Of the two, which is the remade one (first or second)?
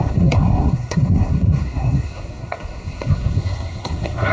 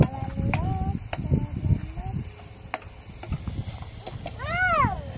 first